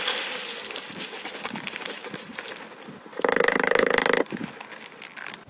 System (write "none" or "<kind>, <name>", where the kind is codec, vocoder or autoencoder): none